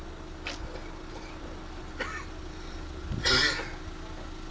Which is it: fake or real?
real